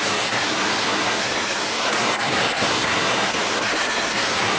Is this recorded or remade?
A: remade